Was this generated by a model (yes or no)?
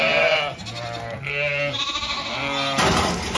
no